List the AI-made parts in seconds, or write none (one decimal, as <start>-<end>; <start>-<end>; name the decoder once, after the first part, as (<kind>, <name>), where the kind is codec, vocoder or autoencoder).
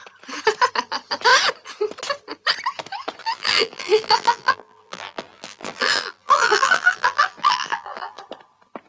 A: 3.2-8.2 (vocoder, BigVGAN v2)